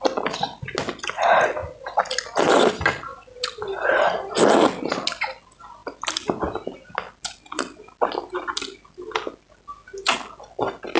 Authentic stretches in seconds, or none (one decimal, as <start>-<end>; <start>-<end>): 0.0-11.0